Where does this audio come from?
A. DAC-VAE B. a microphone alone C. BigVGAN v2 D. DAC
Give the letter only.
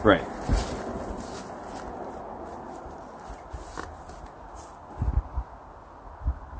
B